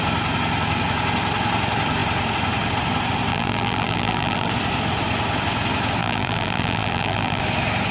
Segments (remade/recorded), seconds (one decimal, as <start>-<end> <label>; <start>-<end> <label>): 0.0-3.3 recorded; 3.3-4.5 remade; 4.5-6.0 recorded; 6.0-7.4 remade; 7.4-7.9 recorded